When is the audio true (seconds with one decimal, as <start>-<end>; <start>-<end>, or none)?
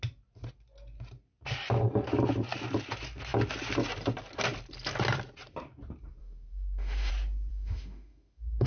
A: 0.0-6.2; 7.1-7.5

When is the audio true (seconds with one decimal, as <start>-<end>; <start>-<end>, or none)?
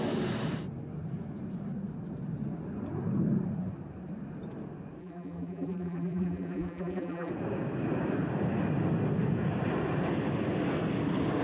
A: 0.0-5.0; 7.3-11.4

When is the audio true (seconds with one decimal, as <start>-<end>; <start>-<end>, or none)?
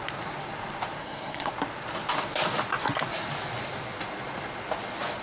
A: 0.0-1.0; 1.5-5.2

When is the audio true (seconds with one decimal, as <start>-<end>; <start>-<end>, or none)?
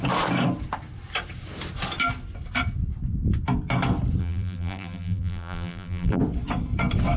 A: 0.0-4.2; 6.2-7.2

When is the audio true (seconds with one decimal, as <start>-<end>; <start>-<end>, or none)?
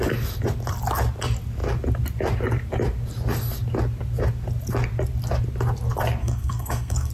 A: 0.0-6.2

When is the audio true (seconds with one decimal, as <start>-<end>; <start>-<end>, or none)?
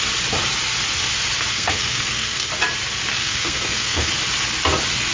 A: 0.0-1.5; 2.5-3.1; 4.1-5.1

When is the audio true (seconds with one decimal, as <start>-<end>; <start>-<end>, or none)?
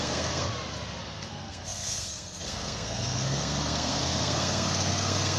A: 0.5-1.0